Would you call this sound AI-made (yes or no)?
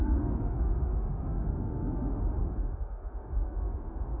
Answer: yes